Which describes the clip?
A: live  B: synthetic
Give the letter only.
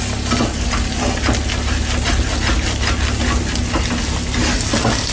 A